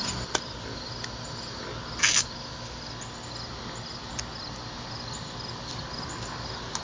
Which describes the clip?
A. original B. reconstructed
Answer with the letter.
A